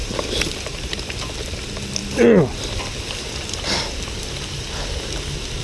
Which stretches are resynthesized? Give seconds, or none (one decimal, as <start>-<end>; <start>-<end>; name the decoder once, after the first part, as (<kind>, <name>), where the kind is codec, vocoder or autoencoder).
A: none